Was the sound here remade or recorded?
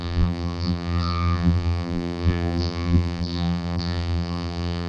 remade